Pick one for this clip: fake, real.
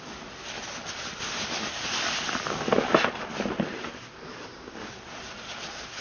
real